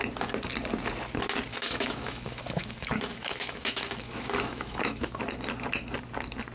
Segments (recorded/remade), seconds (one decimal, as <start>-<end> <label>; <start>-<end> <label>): 0.0-1.5 recorded; 1.5-5.2 remade; 5.2-6.5 recorded